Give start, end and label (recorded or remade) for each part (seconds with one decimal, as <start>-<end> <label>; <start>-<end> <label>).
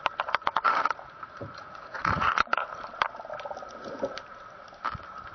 0.0-0.4 recorded; 0.4-2.7 remade; 2.7-5.3 recorded